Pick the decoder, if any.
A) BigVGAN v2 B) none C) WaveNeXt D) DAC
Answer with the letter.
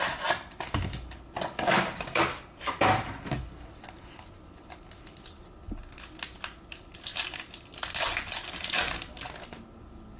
B